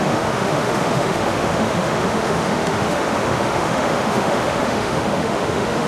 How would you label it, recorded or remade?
remade